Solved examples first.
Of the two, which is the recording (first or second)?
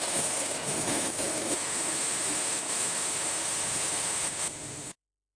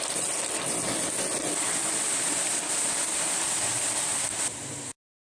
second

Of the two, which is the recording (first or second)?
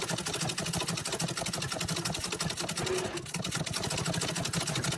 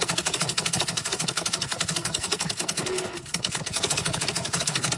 first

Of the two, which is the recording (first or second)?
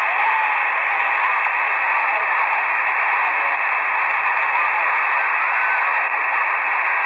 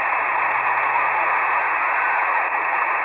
first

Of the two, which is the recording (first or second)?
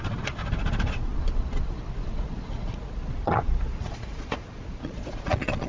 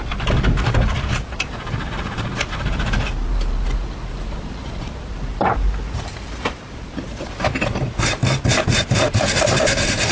second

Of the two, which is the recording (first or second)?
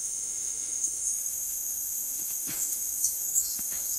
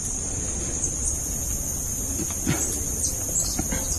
second